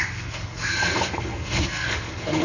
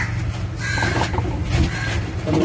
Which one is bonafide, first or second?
second